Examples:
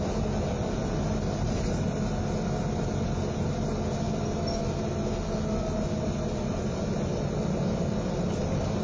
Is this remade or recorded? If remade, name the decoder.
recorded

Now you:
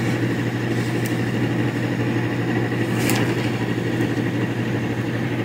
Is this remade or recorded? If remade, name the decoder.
recorded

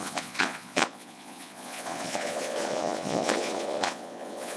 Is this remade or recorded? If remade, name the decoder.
remade, vocoder, Vocos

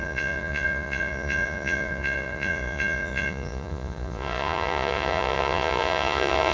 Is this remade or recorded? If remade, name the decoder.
remade, vocoder, Vocos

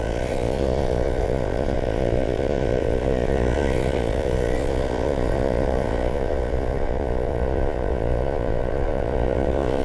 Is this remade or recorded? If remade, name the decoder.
remade, vocoder, Vocos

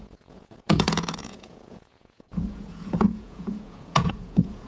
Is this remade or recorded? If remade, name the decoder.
remade, vocoder, Vocos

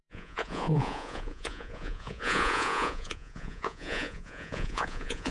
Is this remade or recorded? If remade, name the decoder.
remade, vocoder, Vocos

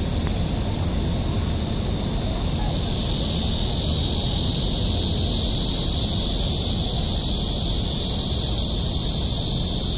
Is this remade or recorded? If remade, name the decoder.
recorded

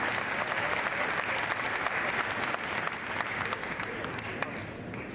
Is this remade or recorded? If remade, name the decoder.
recorded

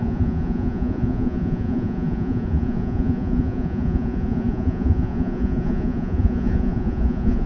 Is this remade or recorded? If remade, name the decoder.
remade, vocoder, Vocos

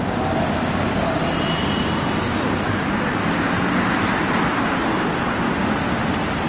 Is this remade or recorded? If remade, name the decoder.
recorded